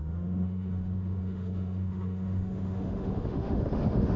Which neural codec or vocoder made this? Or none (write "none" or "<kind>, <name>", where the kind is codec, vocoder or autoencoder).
autoencoder, DAC-VAE